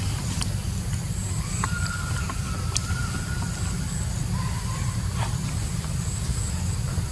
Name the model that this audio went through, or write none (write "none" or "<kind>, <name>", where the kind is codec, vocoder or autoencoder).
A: none